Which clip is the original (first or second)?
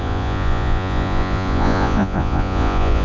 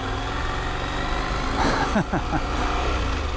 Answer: second